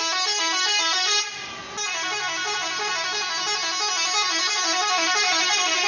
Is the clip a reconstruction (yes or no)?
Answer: no